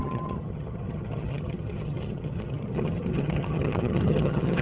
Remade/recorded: remade